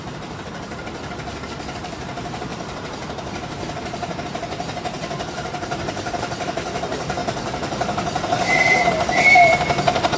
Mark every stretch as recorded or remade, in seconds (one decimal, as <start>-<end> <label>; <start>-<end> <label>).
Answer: 0.0-7.2 remade; 7.2-8.9 recorded; 8.9-10.2 remade